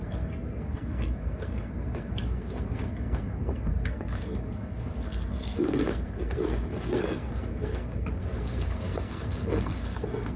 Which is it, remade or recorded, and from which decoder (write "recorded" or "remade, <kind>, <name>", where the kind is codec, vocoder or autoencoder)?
remade, codec, SNAC